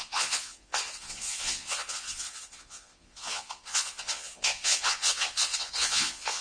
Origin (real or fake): fake